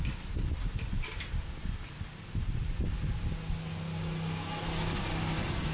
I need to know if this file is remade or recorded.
recorded